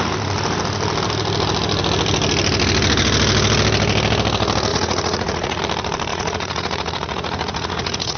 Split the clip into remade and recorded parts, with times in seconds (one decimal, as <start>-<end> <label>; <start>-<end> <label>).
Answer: 0.0-4.7 recorded; 4.7-5.6 remade; 5.6-6.1 recorded; 6.1-8.2 remade